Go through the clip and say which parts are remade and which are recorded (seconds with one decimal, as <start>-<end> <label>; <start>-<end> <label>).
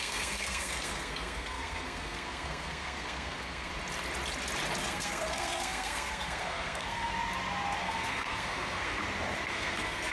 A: 0.0-3.7 remade; 3.7-4.8 recorded; 4.8-7.1 remade; 7.1-7.8 recorded; 7.8-9.0 remade; 9.0-9.5 recorded; 9.5-10.1 remade